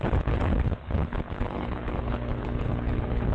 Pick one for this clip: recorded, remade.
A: remade